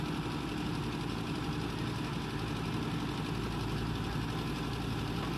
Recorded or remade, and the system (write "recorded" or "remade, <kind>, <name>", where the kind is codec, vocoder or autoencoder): recorded